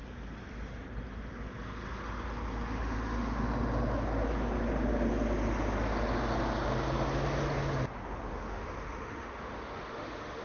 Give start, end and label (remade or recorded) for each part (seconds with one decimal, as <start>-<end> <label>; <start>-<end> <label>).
0.0-2.8 recorded; 2.8-3.4 remade; 3.4-8.3 recorded; 8.3-10.4 remade